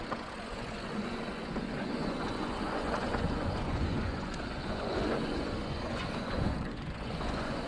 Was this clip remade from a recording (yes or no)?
yes